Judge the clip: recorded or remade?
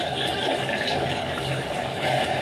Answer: remade